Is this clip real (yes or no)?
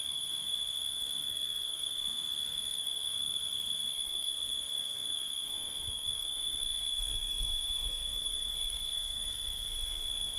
no